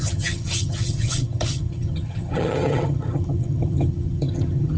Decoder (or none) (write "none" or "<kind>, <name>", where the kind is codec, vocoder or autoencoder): vocoder, HiFi-GAN